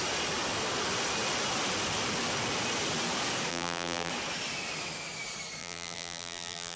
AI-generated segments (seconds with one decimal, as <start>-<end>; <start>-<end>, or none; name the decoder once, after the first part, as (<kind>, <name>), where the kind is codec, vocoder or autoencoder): 3.5-4.1 (vocoder, BigVGAN v2); 5.6-6.8